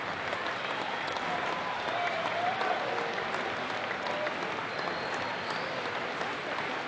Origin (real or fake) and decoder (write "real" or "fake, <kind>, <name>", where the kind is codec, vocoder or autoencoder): real